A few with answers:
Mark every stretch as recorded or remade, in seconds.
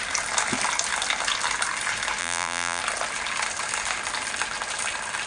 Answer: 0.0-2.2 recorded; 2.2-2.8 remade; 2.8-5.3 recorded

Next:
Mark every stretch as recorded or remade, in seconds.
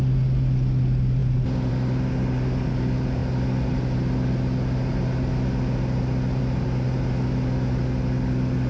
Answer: 0.0-8.7 recorded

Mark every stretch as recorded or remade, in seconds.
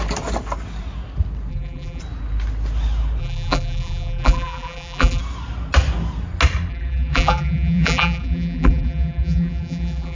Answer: 0.0-1.5 recorded; 1.5-2.0 remade; 2.0-3.2 recorded; 3.2-5.2 remade; 5.2-6.7 recorded; 6.7-10.2 remade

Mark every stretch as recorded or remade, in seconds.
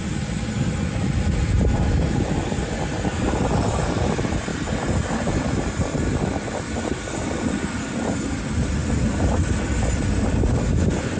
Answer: 0.0-4.5 recorded; 4.5-6.2 remade; 6.2-11.2 recorded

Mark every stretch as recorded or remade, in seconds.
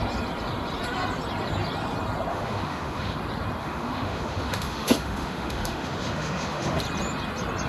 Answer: 0.0-2.3 recorded; 2.3-3.2 remade; 3.2-3.6 recorded; 3.6-6.8 remade; 6.8-7.7 recorded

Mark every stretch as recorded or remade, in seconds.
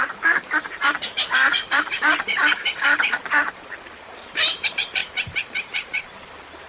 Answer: 0.0-6.7 remade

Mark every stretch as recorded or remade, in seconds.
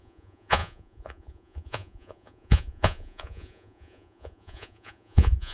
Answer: 0.0-5.5 remade